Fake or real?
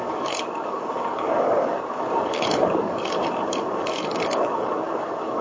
fake